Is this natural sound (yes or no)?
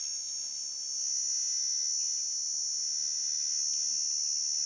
yes